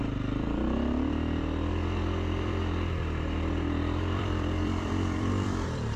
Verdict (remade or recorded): remade